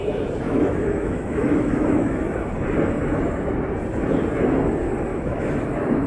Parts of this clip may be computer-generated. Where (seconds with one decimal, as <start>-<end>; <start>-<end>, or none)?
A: 0.0-2.5; 5.1-6.1